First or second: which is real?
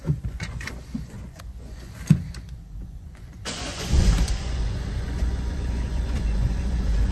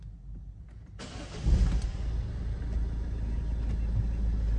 second